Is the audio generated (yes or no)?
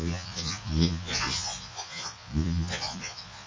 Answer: yes